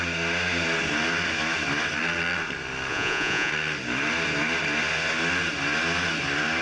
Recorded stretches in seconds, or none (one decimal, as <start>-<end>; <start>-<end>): 0.0-2.9; 3.5-6.6